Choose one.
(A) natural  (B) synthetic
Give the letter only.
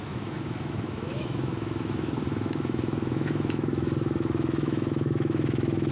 B